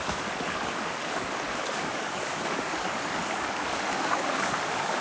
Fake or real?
fake